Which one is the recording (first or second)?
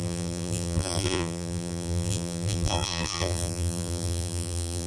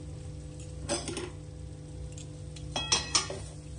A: second